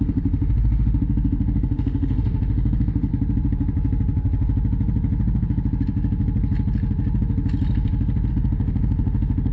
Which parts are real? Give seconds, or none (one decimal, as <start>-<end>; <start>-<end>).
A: 3.1-8.3